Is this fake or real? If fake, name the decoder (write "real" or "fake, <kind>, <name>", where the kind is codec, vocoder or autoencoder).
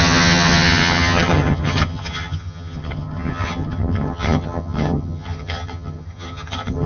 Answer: fake, vocoder, HiFi-GAN